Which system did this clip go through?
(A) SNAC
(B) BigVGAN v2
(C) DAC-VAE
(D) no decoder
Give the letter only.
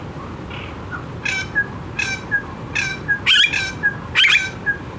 D